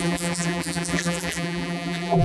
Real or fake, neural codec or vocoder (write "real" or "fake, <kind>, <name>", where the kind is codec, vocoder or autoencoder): fake, vocoder, BigVGAN v2